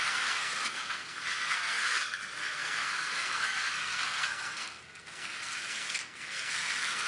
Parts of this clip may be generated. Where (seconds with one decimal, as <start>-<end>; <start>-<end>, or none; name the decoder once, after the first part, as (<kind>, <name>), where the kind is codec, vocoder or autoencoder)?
0.0-7.1 (codec, SNAC)